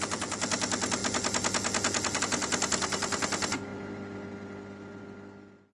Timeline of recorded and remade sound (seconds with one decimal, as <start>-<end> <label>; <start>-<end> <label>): 0.0-5.7 recorded